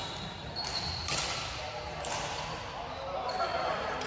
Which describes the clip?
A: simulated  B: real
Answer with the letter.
B